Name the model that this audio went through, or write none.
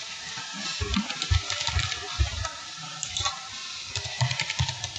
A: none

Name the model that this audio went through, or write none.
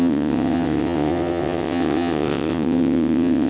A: vocoder, WaveNeXt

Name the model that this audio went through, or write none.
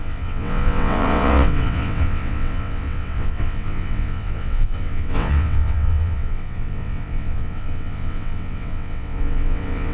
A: vocoder, WaveNeXt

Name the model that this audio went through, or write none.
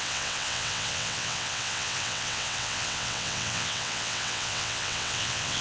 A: vocoder, WaveNeXt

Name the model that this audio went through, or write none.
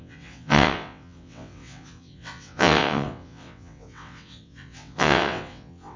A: vocoder, WaveNeXt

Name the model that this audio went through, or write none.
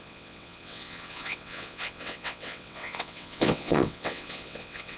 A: vocoder, WaveNeXt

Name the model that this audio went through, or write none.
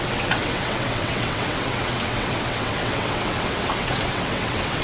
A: vocoder, WaveNeXt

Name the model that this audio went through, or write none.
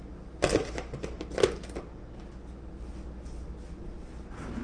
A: none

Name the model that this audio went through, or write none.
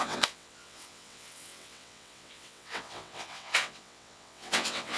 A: vocoder, WaveNeXt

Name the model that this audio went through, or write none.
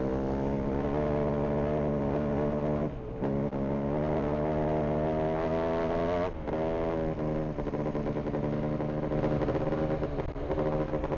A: none